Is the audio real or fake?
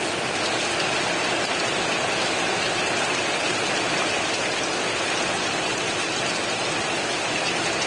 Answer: real